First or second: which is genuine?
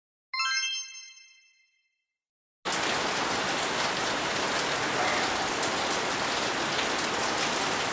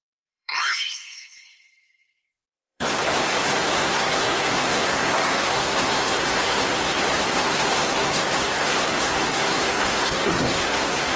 first